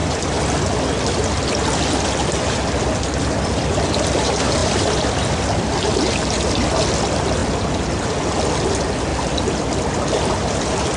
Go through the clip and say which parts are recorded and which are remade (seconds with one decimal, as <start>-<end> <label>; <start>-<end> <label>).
0.0-0.5 remade; 0.5-4.6 recorded; 4.6-5.8 remade; 5.8-9.1 recorded; 9.1-11.0 remade